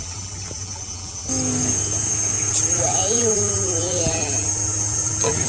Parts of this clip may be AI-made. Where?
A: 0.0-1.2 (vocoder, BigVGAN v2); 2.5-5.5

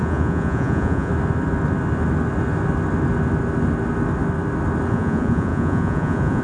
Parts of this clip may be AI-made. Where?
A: 0.0-1.1 (vocoder, Vocos); 4.9-6.4

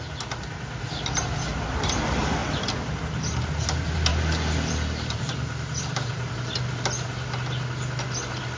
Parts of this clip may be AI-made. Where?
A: 2.4-3.0 (vocoder, BigVGAN v2); 4.1-6.3

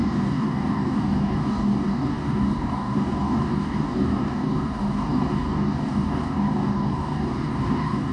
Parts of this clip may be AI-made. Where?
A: 0.0-8.1 (codec, DAC)

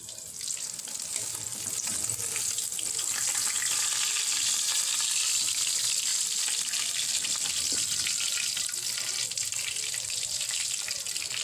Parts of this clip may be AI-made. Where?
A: none

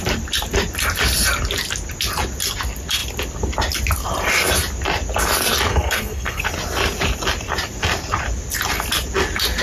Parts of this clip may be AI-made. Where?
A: 5.7-6.4 (codec, SNAC)